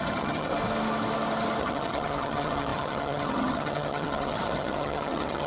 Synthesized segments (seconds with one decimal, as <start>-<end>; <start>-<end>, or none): 0.0-0.5; 1.6-5.5